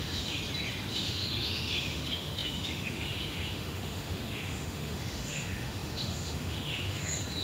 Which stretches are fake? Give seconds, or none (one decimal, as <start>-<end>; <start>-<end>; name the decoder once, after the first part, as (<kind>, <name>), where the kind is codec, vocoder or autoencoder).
0.0-0.4 (autoencoder, DAC-VAE); 0.9-7.4

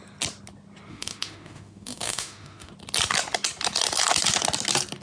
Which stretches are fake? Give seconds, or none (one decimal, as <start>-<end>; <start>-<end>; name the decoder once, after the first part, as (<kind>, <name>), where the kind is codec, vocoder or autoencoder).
0.9-2.7 (autoencoder, DAC-VAE)

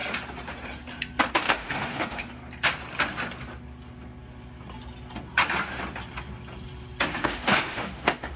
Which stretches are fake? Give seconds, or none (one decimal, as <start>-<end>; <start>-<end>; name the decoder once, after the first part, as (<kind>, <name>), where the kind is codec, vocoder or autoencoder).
1.3-2.4 (autoencoder, DAC-VAE); 7.2-8.4